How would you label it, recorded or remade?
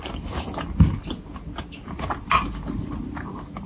recorded